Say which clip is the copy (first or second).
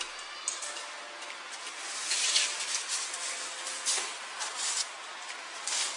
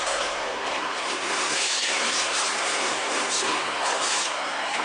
second